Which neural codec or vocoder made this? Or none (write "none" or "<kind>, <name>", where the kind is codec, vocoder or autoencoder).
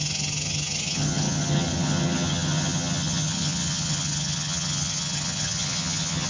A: vocoder, HiFi-GAN